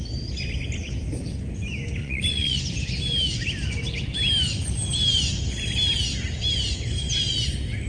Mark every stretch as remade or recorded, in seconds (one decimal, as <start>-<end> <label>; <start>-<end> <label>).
0.0-2.0 recorded; 2.0-2.6 remade; 2.6-7.9 recorded